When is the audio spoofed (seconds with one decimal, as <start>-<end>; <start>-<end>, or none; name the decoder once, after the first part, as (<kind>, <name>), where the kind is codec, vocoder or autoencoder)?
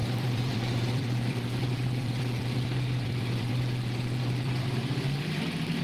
0.0-3.5 (vocoder, BigVGAN v2); 4.2-5.8